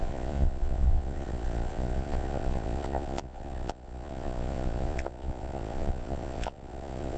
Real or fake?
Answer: fake